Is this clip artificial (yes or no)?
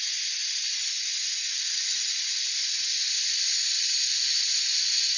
no